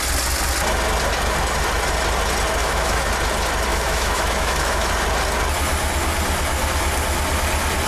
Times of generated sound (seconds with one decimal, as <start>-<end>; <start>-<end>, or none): 2.6-3.1; 3.7-4.9

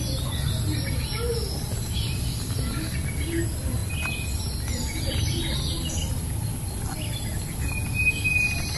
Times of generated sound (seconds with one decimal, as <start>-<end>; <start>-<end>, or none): none

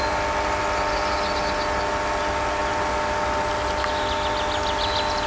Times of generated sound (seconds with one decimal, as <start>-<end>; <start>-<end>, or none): none

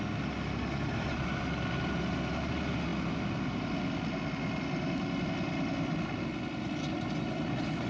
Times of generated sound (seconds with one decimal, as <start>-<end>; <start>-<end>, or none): none

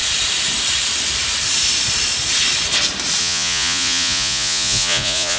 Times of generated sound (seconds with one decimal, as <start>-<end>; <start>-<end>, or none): 3.2-5.4

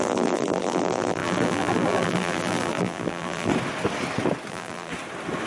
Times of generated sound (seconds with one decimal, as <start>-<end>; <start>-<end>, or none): 0.0-3.5; 4.5-4.9